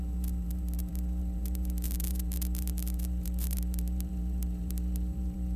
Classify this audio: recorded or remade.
remade